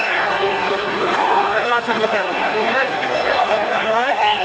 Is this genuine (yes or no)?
no